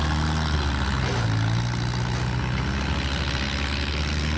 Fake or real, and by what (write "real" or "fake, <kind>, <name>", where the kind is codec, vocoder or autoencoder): real